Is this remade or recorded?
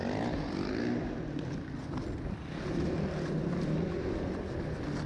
recorded